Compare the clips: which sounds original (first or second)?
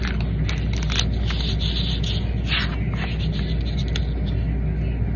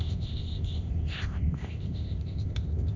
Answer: first